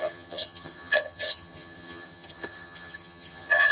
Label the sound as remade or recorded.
remade